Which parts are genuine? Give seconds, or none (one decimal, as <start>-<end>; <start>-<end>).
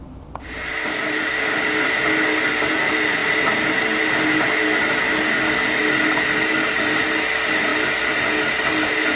0.0-9.2